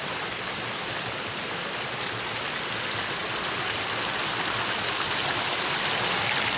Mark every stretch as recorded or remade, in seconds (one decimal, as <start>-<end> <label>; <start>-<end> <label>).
0.0-3.2 recorded; 3.2-3.8 remade; 3.8-6.6 recorded